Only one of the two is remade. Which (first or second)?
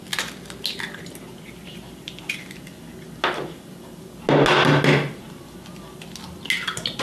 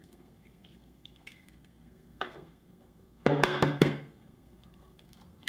second